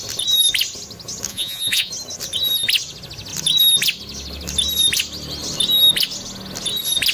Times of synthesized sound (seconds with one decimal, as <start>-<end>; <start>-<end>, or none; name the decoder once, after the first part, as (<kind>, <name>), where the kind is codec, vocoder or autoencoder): 1.3-1.9 (vocoder, Vocos)